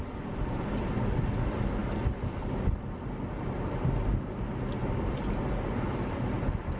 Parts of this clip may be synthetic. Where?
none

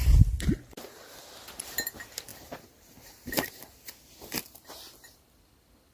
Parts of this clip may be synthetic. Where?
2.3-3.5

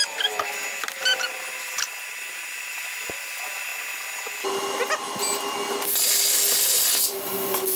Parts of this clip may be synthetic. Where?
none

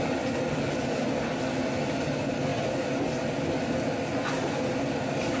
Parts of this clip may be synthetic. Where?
none